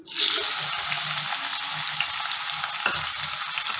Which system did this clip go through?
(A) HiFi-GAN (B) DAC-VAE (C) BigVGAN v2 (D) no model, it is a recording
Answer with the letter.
D